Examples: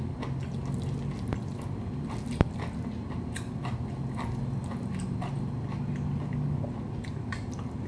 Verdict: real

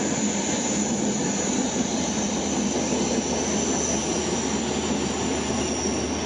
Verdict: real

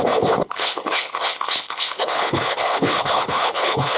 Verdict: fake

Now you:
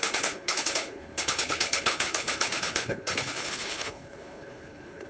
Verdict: fake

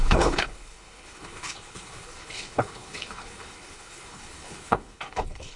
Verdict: fake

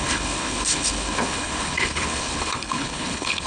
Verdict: fake